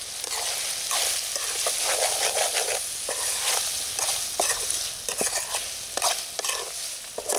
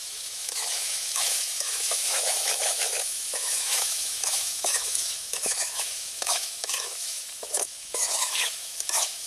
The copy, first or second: second